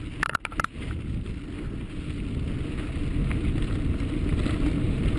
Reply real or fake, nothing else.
real